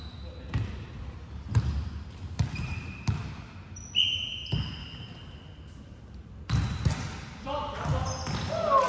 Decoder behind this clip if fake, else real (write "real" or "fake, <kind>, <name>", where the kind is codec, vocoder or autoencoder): real